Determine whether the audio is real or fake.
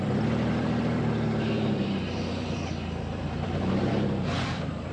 fake